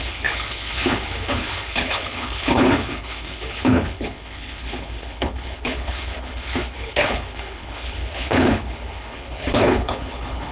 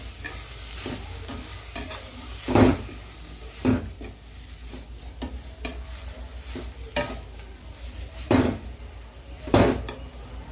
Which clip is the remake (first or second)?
first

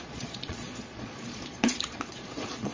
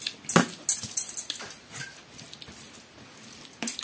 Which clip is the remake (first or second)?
first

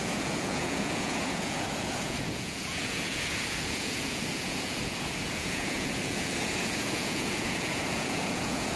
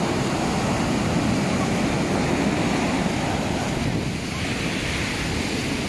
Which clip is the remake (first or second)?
first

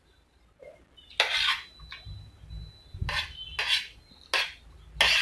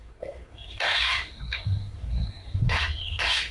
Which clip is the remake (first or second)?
second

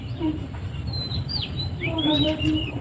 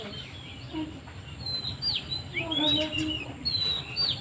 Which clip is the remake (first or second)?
first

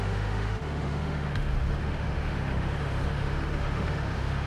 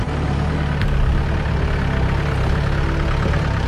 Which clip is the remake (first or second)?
first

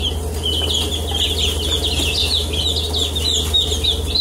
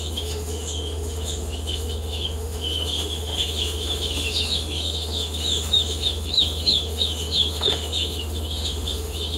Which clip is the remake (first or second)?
second